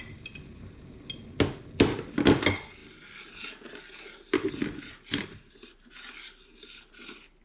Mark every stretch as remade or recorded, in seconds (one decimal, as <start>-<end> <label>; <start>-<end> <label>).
0.0-7.4 recorded